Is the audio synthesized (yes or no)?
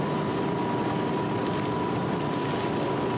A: no